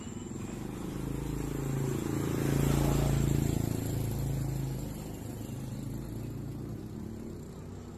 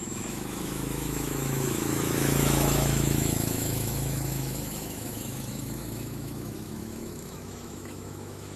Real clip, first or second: first